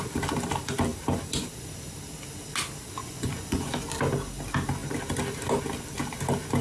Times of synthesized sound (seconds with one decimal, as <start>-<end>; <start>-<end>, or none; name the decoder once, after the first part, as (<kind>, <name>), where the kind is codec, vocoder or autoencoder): 3.0-3.7 (vocoder, Vocos)